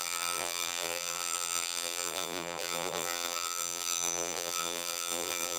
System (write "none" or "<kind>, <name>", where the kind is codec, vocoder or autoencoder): vocoder, BigVGAN v2